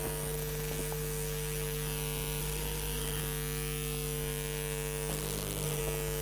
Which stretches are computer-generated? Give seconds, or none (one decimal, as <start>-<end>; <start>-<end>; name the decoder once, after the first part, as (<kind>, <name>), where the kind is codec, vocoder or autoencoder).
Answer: 2.4-3.2 (codec, SNAC); 5.1-5.8